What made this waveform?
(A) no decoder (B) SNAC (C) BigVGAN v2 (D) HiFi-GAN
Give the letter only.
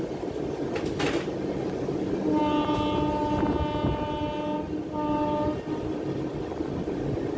A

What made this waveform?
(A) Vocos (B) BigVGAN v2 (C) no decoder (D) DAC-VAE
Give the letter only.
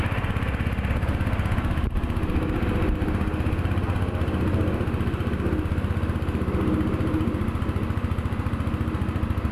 C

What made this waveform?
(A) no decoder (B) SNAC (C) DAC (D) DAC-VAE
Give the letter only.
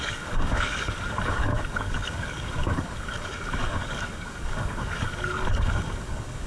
C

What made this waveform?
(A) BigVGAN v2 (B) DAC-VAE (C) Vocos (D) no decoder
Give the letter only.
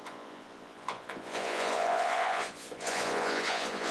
C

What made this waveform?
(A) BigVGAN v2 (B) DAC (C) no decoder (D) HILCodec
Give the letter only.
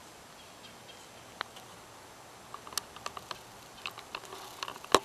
C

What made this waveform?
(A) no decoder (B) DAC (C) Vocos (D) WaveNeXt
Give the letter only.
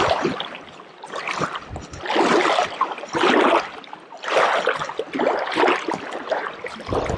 A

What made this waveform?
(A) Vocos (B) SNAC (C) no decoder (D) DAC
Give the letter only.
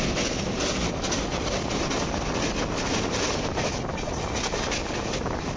C